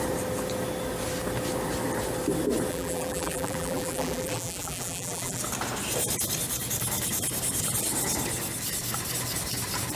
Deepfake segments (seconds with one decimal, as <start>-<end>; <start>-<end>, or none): 2.7-5.4